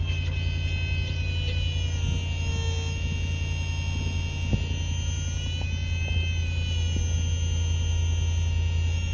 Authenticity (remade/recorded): recorded